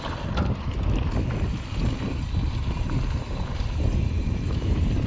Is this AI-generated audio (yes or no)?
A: no